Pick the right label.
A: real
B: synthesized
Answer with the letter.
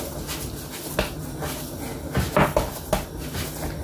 A